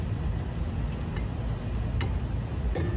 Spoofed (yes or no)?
no